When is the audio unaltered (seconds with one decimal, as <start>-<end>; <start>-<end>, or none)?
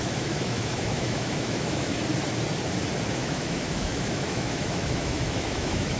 2.0-3.1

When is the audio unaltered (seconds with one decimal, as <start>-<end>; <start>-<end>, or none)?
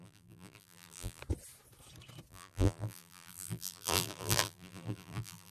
1.2-2.3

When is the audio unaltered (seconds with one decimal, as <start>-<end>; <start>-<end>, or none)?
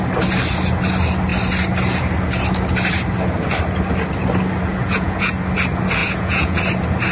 0.0-4.7; 5.3-6.0; 6.6-7.1